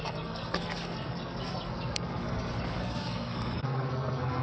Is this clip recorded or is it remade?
remade